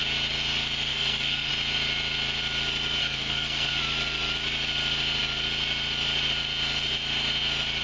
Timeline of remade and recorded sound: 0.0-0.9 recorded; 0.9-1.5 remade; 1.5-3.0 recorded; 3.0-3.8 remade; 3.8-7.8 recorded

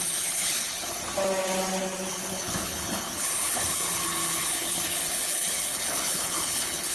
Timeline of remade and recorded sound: 0.0-1.0 remade; 1.0-2.1 recorded; 2.1-6.9 remade

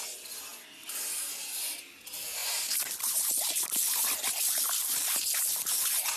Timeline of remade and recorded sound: 0.0-0.5 recorded; 0.5-1.7 remade; 1.7-2.4 recorded; 2.4-4.5 remade; 4.5-6.2 recorded

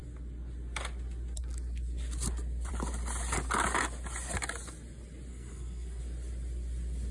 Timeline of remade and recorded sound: 0.0-5.3 recorded; 5.3-6.0 remade; 6.0-7.1 recorded

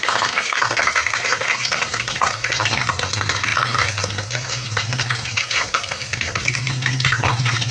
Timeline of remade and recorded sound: 0.0-7.7 remade

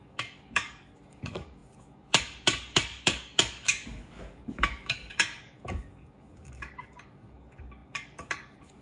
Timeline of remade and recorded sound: 0.0-8.8 remade

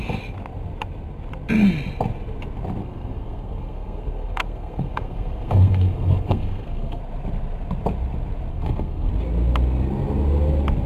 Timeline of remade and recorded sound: 0.0-2.8 recorded; 2.8-7.0 remade; 7.0-8.5 recorded; 8.5-9.1 remade; 9.1-10.9 recorded